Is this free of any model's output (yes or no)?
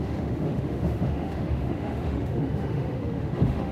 no